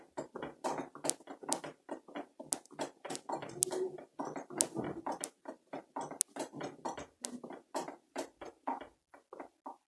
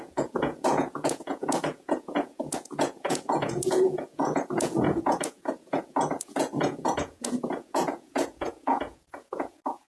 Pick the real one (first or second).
first